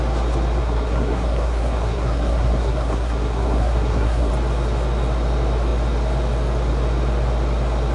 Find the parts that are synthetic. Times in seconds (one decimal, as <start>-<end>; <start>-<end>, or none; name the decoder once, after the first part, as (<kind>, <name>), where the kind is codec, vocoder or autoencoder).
0.6-4.3 (codec, SNAC)

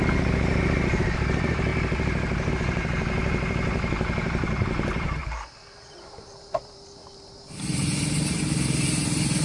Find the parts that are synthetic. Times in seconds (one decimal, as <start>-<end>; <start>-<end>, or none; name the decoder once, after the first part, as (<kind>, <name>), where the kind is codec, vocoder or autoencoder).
0.0-9.4 (vocoder, BigVGAN v2)

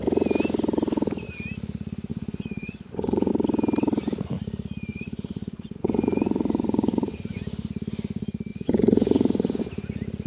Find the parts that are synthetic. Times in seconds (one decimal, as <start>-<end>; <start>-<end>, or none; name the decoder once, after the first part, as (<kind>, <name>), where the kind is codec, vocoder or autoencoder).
2.1-3.3 (vocoder, Vocos); 4.9-7.4; 8.5-9.6

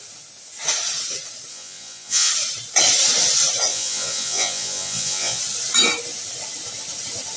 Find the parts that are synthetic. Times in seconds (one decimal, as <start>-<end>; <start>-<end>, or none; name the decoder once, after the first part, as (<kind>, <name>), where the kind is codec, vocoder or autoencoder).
1.5-2.3 (vocoder, Vocos); 3.7-5.4

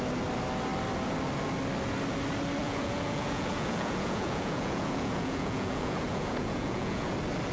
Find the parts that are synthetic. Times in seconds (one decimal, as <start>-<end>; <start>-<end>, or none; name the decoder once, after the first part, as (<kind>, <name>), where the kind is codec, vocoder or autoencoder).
2.6-7.1 (vocoder, Vocos)

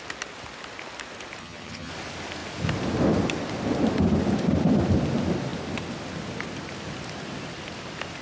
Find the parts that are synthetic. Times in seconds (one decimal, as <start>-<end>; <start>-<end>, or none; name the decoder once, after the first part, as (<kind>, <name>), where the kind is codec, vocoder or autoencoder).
1.4-1.9 (vocoder, HiFi-GAN)

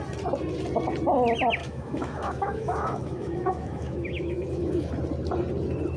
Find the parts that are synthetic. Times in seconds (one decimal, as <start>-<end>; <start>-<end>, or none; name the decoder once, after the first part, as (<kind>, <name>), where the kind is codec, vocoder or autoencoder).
1.6-4.9 (autoencoder, DAC-VAE)

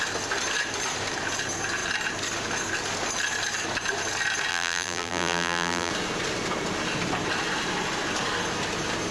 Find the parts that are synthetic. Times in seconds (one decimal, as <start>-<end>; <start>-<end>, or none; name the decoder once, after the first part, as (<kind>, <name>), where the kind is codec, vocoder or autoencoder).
4.5-5.9 (vocoder, BigVGAN v2)